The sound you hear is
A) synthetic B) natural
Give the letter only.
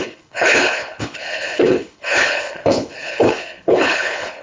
A